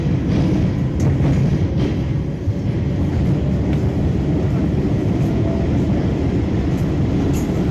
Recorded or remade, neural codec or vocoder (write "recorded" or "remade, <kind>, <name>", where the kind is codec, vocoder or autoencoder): recorded